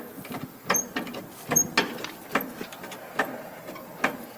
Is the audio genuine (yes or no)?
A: yes